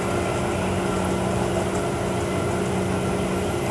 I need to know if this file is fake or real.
real